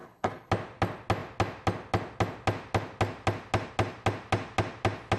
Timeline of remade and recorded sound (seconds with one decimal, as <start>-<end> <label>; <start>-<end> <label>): 0.0-0.5 remade; 0.5-5.2 recorded